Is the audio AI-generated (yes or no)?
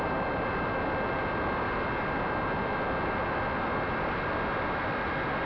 no